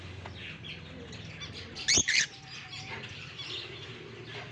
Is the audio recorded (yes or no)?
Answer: yes